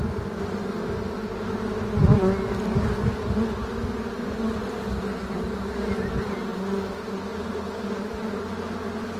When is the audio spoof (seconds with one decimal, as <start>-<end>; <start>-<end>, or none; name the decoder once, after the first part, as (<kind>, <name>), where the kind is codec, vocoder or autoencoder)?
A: 0.0-0.7 (vocoder, BigVGAN v2)